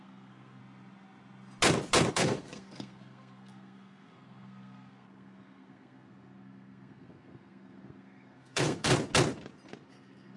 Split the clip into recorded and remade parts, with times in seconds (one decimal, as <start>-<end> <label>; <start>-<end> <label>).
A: 0.0-0.6 remade; 0.6-2.1 recorded; 2.1-8.9 remade; 8.9-9.9 recorded; 9.9-10.4 remade